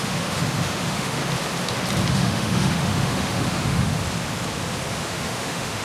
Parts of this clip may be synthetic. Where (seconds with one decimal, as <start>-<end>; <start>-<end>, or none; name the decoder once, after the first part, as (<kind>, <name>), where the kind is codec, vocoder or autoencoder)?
0.0-1.2 (autoencoder, DAC-VAE); 2.1-3.9; 4.9-5.8